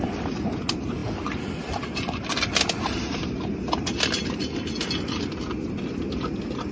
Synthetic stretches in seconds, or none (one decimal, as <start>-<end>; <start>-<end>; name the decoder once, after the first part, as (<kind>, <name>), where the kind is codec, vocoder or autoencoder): none